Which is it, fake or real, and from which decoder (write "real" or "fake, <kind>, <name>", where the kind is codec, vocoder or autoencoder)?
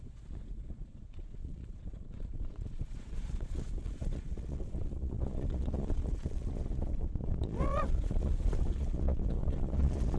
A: fake, vocoder, Vocos